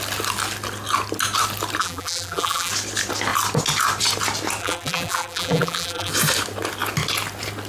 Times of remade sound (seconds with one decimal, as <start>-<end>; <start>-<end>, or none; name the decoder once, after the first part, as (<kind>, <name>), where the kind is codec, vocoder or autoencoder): 1.8-2.7 (vocoder, BigVGAN v2); 4.6-6.1